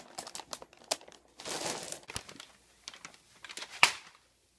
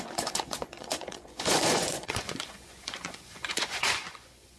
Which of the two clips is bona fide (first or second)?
first